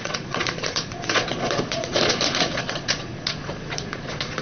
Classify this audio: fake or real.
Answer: fake